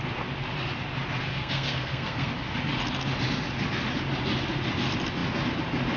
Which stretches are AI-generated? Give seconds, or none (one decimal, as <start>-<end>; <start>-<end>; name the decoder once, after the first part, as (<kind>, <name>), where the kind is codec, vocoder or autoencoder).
1.3-2.3 (codec, SNAC)